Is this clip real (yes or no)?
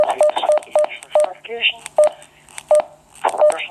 yes